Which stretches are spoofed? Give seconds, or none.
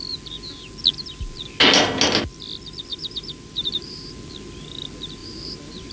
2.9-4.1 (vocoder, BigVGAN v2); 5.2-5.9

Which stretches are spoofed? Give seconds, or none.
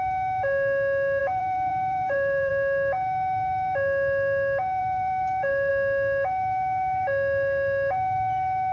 1.2-2.5 (vocoder, BigVGAN v2); 4.8-5.7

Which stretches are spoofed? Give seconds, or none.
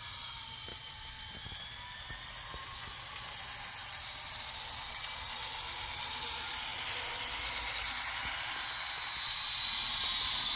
0.7-1.3 (vocoder, BigVGAN v2); 3.8-5.0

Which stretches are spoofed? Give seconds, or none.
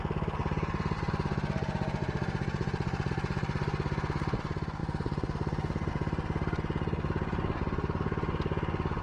0.4-1.1 (vocoder, BigVGAN v2); 2.0-3.1; 4.8-5.9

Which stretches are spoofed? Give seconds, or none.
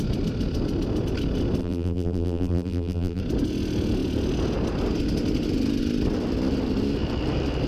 1.6-3.2 (vocoder, BigVGAN v2)